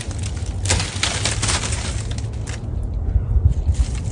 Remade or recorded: recorded